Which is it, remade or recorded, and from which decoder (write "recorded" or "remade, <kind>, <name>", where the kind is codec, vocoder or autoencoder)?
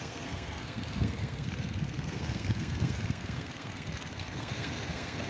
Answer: remade, codec, SNAC